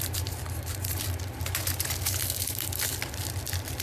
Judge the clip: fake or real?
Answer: fake